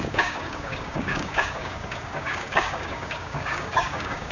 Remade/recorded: remade